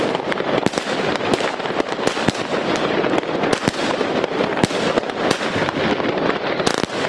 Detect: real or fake real